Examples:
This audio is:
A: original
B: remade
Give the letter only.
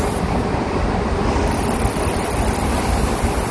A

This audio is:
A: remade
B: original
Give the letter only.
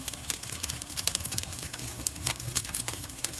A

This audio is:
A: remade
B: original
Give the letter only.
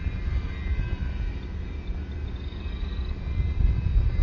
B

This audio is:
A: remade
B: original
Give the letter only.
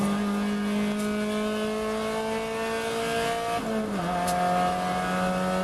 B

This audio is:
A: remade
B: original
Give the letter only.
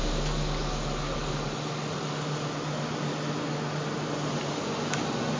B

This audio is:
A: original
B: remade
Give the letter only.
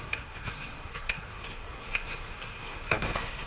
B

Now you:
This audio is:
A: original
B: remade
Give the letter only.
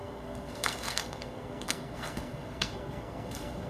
B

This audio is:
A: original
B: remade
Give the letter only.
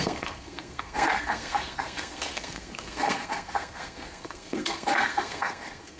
B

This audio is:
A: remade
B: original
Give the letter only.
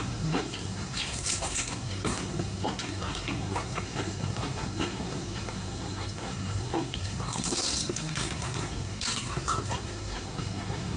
A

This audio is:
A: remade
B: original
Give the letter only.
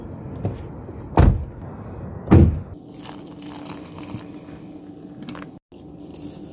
B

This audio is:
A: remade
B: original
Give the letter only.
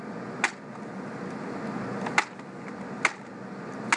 B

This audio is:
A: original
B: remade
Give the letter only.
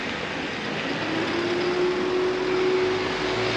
A